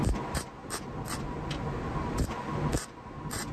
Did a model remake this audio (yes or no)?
no